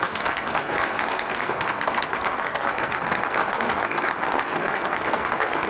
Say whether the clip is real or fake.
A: fake